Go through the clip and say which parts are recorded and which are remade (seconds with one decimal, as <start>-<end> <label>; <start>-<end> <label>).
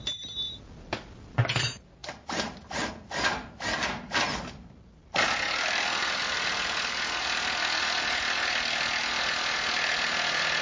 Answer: 0.0-10.6 recorded